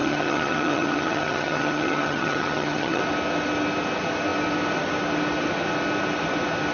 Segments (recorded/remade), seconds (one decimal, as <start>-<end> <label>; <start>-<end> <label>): 0.0-3.0 remade; 3.0-6.7 recorded